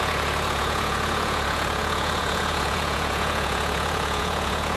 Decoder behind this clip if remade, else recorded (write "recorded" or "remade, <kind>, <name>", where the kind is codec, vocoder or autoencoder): remade, vocoder, Vocos